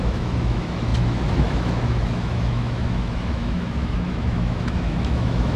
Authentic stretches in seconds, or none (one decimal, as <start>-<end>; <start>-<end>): none